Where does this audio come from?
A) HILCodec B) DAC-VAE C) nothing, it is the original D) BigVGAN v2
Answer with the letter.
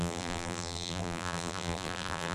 D